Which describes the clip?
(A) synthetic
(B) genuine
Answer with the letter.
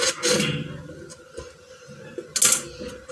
B